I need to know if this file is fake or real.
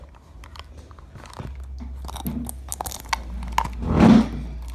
real